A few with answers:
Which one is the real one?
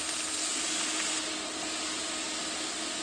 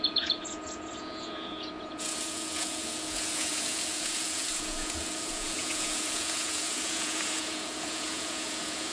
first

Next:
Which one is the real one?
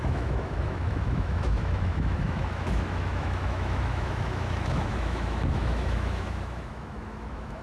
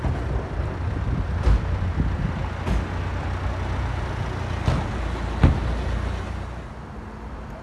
second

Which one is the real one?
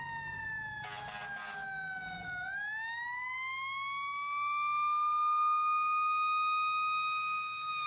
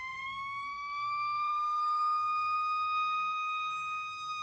first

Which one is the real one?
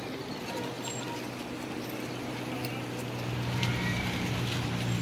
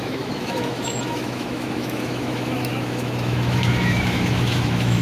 first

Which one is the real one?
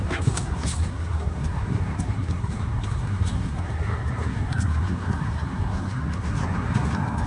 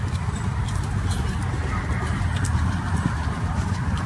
second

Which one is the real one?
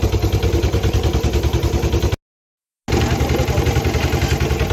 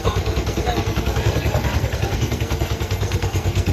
first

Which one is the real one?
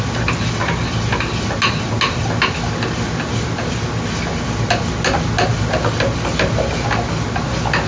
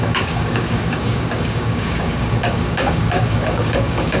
first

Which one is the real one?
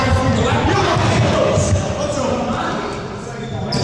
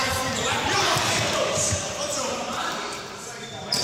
first